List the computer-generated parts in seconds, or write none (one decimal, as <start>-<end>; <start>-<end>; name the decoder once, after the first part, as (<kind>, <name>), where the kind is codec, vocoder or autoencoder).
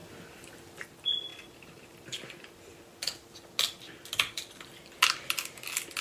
none